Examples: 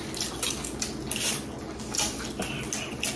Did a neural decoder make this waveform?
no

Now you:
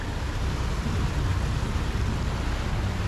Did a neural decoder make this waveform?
no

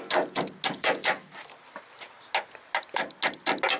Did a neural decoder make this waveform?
no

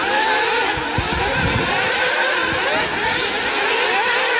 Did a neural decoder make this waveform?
no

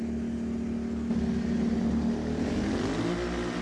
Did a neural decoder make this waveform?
no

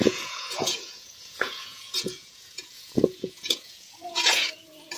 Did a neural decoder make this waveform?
yes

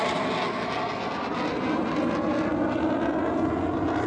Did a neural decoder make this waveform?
no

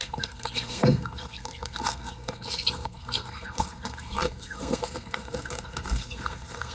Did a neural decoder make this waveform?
yes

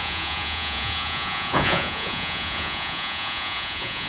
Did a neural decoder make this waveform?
yes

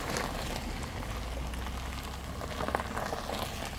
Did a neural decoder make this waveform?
no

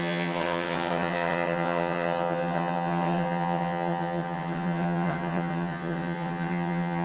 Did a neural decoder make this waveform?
yes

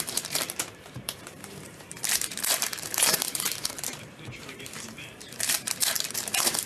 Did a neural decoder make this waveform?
yes